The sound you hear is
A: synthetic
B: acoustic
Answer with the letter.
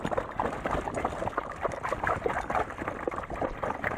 B